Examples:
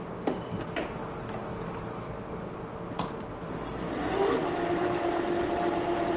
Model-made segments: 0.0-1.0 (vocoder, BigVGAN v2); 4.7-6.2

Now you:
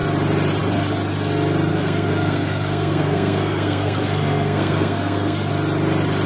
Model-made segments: 1.7-5.5 (codec, SNAC)